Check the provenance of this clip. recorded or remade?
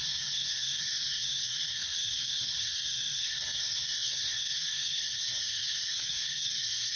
remade